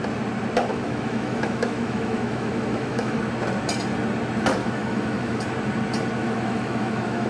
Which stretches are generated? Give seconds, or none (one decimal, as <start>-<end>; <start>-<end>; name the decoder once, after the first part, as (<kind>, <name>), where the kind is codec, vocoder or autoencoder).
0.7-3.2 (autoencoder, DAC-VAE); 4.6-5.4; 6.2-7.3